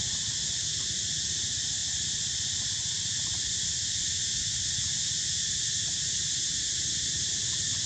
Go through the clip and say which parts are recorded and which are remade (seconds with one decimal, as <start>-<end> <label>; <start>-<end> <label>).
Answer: 0.0-7.9 recorded